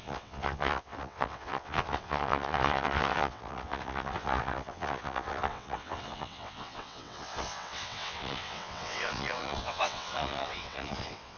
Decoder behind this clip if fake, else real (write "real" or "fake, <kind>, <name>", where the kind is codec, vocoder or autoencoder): fake, vocoder, WaveNeXt